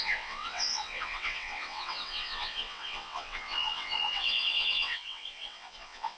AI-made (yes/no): yes